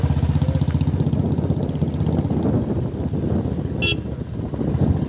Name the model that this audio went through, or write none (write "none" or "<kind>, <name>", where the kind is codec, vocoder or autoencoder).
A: none